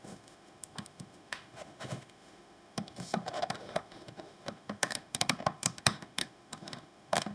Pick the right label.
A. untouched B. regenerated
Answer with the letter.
B